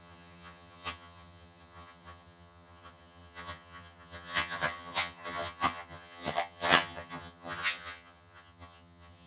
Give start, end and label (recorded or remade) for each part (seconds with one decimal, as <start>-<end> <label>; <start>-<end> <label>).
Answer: 0.0-9.3 remade